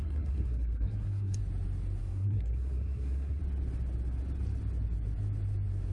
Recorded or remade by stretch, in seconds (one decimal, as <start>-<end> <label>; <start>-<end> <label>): 0.0-1.4 remade; 1.4-2.0 recorded; 2.0-3.4 remade; 3.4-5.9 recorded